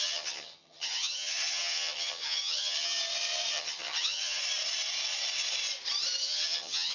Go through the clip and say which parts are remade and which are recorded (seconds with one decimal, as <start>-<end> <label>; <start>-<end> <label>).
0.0-3.0 remade; 3.0-3.5 recorded; 3.5-4.4 remade; 4.4-6.2 recorded; 6.2-6.9 remade

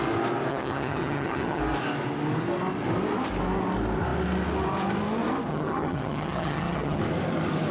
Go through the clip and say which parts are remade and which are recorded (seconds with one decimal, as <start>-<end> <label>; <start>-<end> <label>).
0.0-0.5 recorded; 0.5-1.6 remade; 1.6-5.5 recorded; 5.5-7.0 remade; 7.0-7.7 recorded

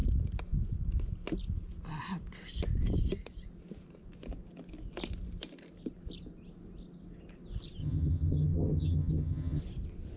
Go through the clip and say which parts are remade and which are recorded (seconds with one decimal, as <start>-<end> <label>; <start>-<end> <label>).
0.0-7.8 recorded; 7.8-9.6 remade; 9.6-10.2 recorded

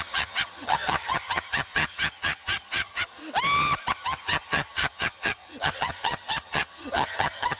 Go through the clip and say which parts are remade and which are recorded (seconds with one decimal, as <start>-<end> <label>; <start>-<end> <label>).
0.0-3.2 remade; 3.2-3.9 recorded; 3.9-7.6 remade

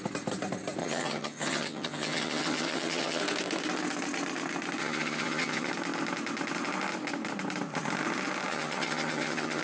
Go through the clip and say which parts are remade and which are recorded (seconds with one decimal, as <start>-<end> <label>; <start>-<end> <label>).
0.0-0.8 recorded; 0.8-3.2 remade; 3.2-4.8 recorded; 4.8-5.7 remade; 5.7-8.5 recorded; 8.5-9.6 remade